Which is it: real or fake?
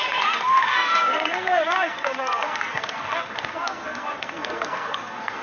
fake